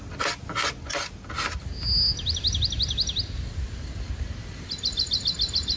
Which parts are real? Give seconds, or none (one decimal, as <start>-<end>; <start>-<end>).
0.0-5.8